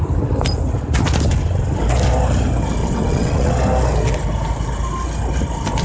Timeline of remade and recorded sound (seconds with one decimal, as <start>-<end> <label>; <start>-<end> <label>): 0.0-2.8 recorded; 2.8-3.5 remade; 3.5-5.8 recorded